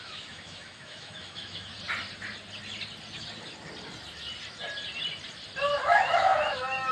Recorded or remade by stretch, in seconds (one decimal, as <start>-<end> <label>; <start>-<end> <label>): 0.0-1.7 remade; 1.7-5.8 recorded; 5.8-6.9 remade

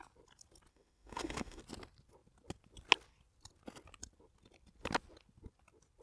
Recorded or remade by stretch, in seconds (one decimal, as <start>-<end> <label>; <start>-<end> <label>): 0.0-0.7 recorded; 0.7-1.6 remade; 1.6-6.0 recorded

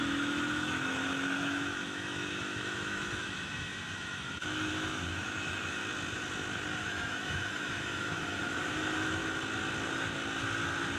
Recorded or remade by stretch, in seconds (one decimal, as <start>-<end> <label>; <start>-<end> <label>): 0.0-5.8 remade; 5.8-6.8 recorded; 6.8-9.2 remade; 9.2-11.0 recorded

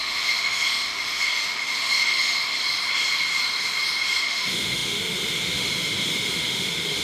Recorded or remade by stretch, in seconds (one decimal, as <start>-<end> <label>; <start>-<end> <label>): 0.0-2.6 remade; 2.6-4.2 recorded; 4.2-7.0 remade

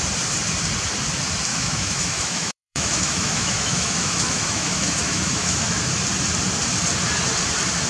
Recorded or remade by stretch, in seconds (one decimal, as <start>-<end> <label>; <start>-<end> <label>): 0.0-1.5 recorded; 1.5-5.8 remade; 5.8-7.9 recorded